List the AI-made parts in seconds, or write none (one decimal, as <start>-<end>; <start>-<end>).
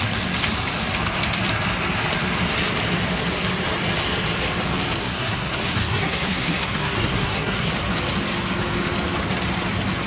5.0-7.7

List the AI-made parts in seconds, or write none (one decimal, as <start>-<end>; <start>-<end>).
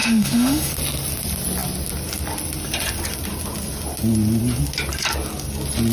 0.0-0.7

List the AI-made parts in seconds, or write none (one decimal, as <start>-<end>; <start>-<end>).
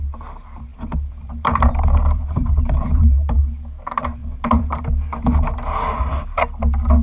0.7-3.4; 4.2-4.8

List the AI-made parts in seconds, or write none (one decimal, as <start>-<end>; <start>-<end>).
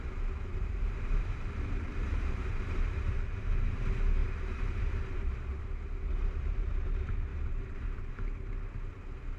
0.5-3.2; 4.2-5.6; 7.3-8.1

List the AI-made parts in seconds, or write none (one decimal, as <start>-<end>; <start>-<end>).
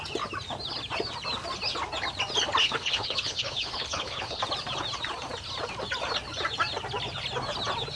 2.6-4.4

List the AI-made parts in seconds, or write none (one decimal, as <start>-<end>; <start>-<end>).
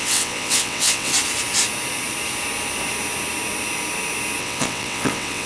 0.0-1.1; 4.4-5.5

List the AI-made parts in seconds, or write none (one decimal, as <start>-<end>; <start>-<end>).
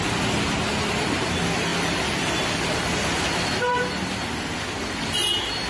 1.7-3.7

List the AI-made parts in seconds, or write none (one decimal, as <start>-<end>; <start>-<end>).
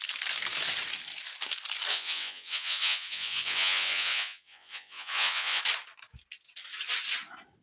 1.9-5.6